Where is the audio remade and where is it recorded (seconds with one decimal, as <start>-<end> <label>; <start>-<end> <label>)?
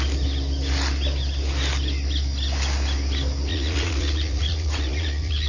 0.0-3.5 recorded; 3.5-5.5 remade